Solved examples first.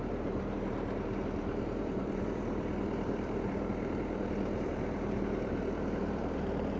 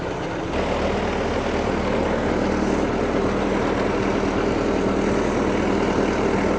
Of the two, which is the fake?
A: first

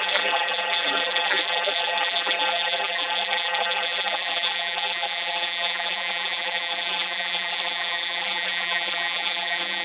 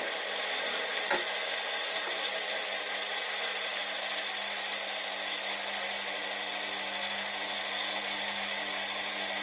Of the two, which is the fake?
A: first